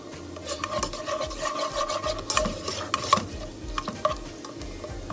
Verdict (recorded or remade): recorded